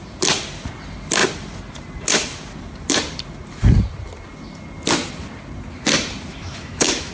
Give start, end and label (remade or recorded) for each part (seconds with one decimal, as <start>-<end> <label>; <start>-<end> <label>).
0.0-6.3 recorded; 6.3-7.1 remade